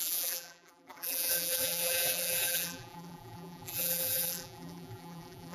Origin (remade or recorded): remade